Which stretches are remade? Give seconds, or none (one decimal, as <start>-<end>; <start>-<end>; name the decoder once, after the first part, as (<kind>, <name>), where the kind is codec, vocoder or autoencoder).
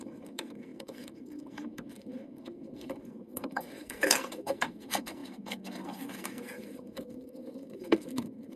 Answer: 0.0-8.6 (codec, SNAC)